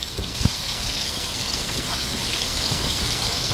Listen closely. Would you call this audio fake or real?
fake